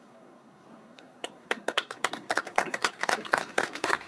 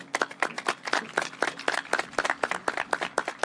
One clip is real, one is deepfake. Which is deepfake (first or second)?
first